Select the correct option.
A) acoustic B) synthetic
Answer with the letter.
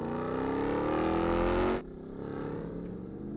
A